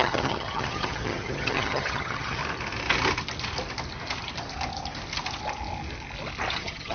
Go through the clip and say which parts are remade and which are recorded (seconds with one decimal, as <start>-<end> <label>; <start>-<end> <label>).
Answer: 0.0-2.4 remade; 2.4-6.5 recorded; 6.5-6.9 remade